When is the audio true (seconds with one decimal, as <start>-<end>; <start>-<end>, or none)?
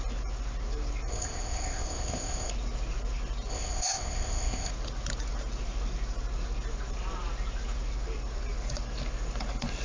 0.0-1.1; 2.5-3.5; 4.7-9.8